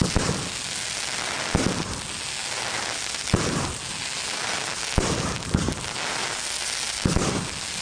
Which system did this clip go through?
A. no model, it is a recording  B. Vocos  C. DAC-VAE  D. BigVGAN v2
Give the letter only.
A